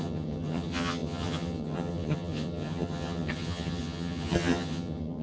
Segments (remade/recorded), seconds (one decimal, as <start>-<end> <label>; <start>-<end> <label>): 0.0-5.2 remade